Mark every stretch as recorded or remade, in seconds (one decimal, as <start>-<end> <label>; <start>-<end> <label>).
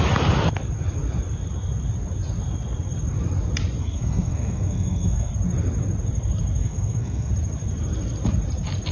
0.0-3.8 recorded; 3.8-5.3 remade; 5.3-6.6 recorded; 6.6-7.3 remade; 7.3-8.9 recorded